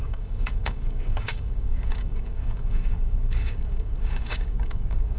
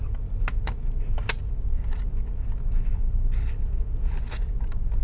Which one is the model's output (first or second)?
first